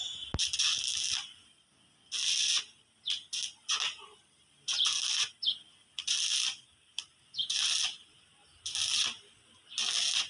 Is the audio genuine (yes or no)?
yes